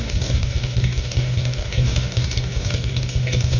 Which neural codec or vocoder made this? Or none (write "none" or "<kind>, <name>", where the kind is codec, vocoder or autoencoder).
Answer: codec, DAC